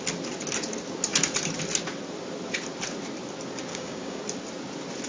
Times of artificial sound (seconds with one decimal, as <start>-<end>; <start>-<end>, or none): 3.7-4.2